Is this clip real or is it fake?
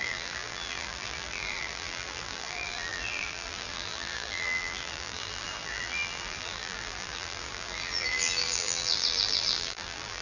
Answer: fake